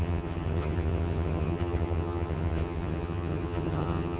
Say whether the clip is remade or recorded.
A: remade